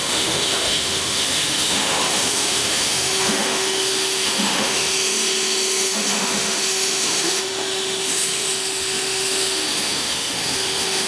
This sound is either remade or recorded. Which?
remade